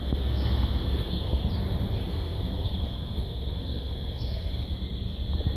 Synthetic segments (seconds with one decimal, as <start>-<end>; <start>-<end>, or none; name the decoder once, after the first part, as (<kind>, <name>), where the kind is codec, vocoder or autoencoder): 0.0-1.4 (codec, SNAC); 2.1-4.5